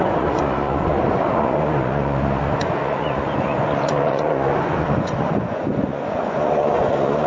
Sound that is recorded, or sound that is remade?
remade